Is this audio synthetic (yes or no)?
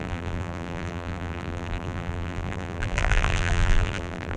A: yes